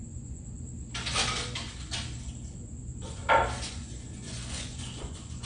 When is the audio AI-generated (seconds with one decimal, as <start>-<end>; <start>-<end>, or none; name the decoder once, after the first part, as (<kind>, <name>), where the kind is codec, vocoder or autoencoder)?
0.0-0.7 (vocoder, Vocos); 2.5-3.2; 3.7-5.5

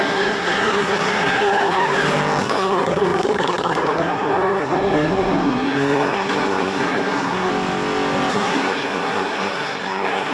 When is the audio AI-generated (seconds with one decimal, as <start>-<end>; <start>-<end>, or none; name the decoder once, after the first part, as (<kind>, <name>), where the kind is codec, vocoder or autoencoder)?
0.0-1.8 (codec, SNAC); 2.4-7.5; 8.3-10.3

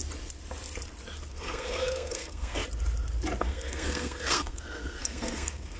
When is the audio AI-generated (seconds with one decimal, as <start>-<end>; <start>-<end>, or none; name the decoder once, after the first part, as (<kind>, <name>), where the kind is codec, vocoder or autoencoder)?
1.3-2.6 (codec, SNAC); 3.4-5.8

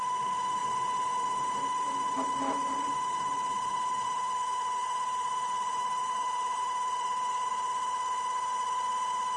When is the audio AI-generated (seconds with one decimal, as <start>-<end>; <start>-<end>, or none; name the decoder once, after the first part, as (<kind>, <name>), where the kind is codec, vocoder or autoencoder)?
3.7-7.5 (vocoder, BigVGAN v2)